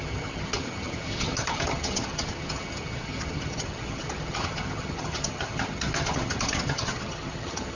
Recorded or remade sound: remade